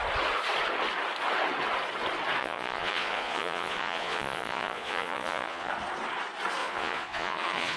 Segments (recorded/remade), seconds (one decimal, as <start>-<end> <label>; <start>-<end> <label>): 0.0-2.4 recorded; 2.4-5.7 remade; 5.7-6.6 recorded; 6.6-7.8 remade